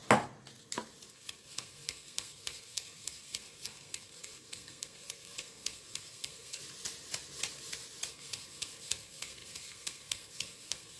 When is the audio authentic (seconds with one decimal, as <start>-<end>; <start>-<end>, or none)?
0.0-1.1; 6.6-8.1